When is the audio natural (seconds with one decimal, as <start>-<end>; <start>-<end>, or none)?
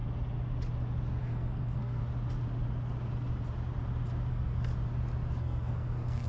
0.0-1.2; 2.0-4.3; 4.7-5.4